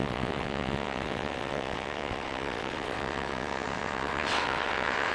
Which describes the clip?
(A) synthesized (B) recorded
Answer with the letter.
A